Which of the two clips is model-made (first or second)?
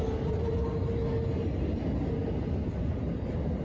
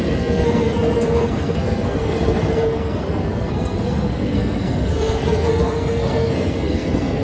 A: second